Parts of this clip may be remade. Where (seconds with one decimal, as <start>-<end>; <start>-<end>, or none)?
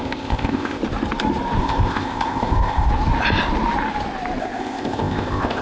0.0-0.8; 1.6-2.9; 4.4-5.6